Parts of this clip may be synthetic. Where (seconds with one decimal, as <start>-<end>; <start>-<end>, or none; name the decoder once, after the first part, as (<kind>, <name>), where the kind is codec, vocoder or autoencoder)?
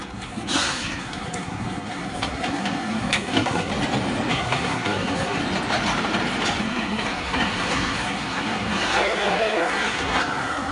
0.0-3.7 (codec, SNAC); 4.3-5.4; 6.6-10.7